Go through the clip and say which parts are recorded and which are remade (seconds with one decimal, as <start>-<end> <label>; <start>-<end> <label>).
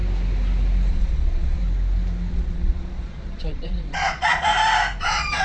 0.0-0.9 recorded; 0.9-1.6 remade; 1.6-2.3 recorded; 2.3-4.5 remade; 4.5-5.0 recorded; 5.0-5.4 remade